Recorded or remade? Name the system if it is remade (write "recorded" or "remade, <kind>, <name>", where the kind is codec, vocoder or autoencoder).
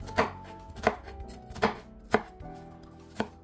recorded